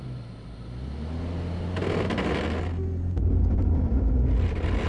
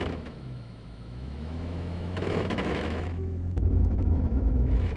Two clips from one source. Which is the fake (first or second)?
second